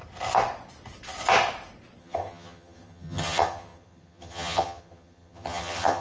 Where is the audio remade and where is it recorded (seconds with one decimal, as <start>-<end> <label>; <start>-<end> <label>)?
0.0-2.0 recorded; 2.0-6.0 remade